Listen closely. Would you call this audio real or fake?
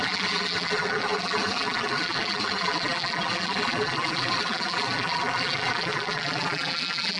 fake